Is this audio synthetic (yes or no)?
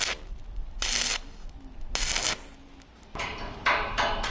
no